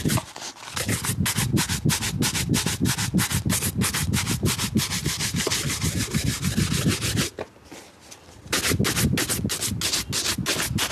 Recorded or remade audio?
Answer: recorded